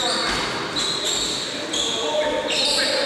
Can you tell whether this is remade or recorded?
recorded